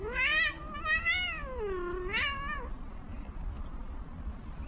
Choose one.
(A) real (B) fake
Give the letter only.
A